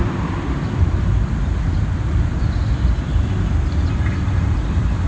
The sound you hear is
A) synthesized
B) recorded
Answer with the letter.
B